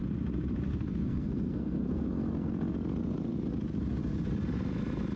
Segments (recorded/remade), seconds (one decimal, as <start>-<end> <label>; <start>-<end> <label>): 0.0-0.7 recorded; 0.7-2.5 remade; 2.5-5.2 recorded